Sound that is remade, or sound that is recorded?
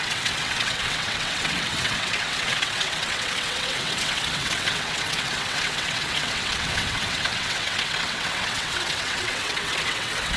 remade